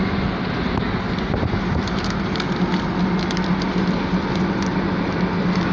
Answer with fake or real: real